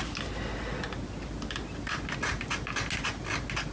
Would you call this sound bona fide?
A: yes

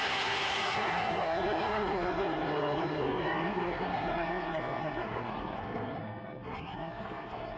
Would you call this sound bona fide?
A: no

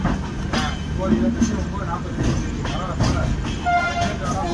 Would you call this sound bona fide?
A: yes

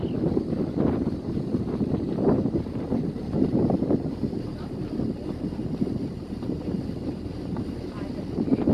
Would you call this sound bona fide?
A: yes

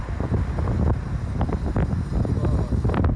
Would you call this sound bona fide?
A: yes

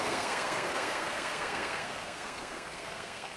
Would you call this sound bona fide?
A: no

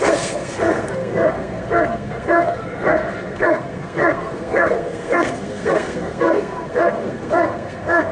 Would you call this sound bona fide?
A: no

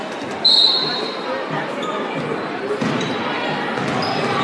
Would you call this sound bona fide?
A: yes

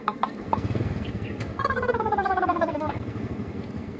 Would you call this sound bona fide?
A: no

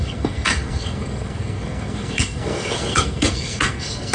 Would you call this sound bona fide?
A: no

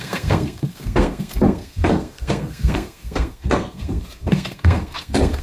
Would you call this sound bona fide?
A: no